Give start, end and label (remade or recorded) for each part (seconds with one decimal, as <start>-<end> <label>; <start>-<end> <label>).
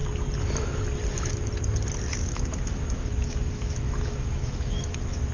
0.0-2.1 recorded; 2.1-5.3 remade